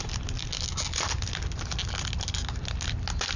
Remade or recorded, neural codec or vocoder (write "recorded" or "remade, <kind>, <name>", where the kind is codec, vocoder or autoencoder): recorded